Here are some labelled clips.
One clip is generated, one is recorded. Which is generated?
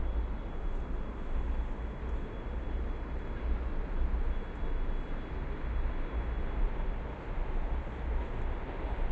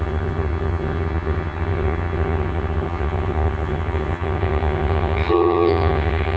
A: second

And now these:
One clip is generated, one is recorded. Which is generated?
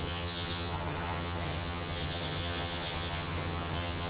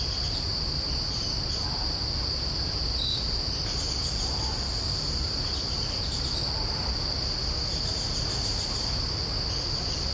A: first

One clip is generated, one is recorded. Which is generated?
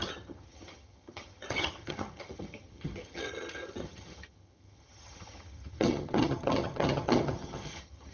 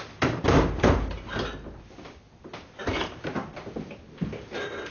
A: first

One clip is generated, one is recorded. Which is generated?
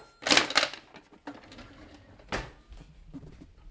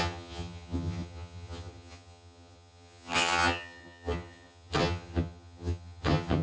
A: second